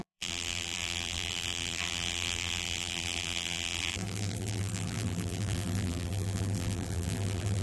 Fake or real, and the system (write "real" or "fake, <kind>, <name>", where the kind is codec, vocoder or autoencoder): fake, vocoder, BigVGAN v2